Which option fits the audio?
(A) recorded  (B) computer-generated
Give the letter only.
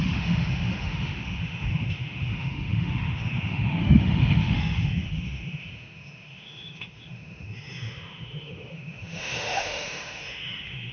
B